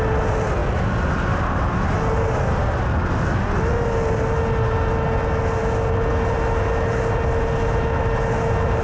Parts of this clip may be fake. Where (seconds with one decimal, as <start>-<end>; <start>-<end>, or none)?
none